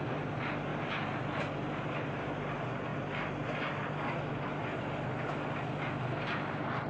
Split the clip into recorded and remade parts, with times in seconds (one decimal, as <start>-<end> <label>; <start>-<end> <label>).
0.0-6.9 recorded

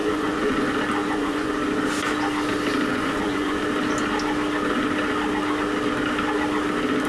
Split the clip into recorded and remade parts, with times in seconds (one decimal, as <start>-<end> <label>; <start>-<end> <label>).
0.0-0.6 remade; 0.6-1.0 recorded; 1.0-1.5 remade; 1.5-2.9 recorded; 2.9-3.6 remade; 3.6-7.1 recorded

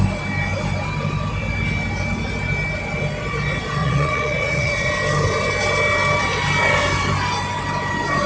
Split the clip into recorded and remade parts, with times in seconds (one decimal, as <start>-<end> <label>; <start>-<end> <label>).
0.0-3.8 recorded; 3.8-4.9 remade; 4.9-8.3 recorded